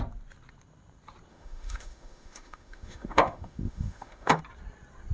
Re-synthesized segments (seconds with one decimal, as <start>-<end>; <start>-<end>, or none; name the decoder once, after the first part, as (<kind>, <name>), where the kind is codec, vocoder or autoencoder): 1.3-4.4 (autoencoder, DAC-VAE)